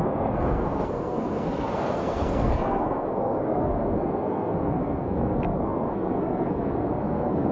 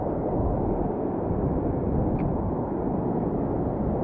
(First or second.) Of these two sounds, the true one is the second